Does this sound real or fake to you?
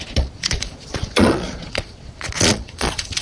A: fake